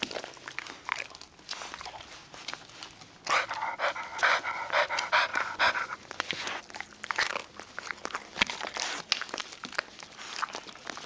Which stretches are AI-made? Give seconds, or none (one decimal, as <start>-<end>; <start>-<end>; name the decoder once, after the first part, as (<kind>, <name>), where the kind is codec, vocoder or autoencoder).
4.1-4.8 (vocoder, Vocos); 5.3-6.6